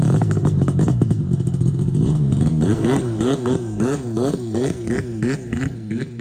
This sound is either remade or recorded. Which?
remade